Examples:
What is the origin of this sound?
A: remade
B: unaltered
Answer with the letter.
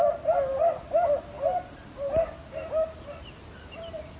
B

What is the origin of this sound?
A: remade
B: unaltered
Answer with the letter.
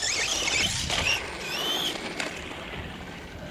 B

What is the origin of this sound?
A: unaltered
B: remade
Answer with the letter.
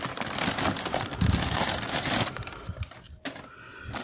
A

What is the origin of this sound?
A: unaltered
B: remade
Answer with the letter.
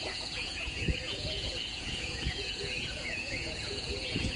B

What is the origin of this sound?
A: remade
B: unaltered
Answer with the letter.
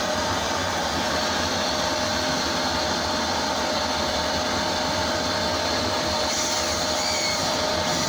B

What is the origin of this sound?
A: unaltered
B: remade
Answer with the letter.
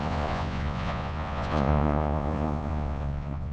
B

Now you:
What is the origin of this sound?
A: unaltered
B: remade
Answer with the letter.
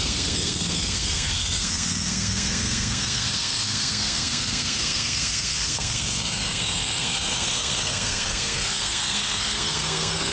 B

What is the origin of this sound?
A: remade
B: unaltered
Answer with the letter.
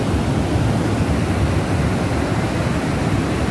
B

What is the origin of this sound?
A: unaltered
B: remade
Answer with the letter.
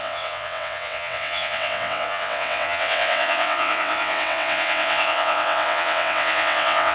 B